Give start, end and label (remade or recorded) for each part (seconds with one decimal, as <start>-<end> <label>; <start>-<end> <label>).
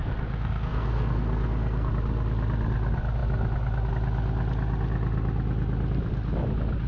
0.0-1.9 remade; 1.9-6.9 recorded